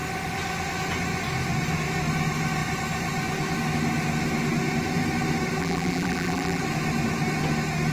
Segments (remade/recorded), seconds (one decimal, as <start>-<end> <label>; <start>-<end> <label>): 0.0-5.6 recorded; 5.6-6.6 remade; 6.6-7.9 recorded